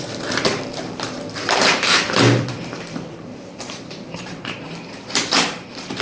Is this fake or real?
fake